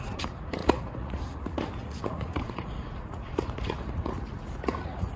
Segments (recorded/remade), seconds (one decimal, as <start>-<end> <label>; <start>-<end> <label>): 0.0-5.2 remade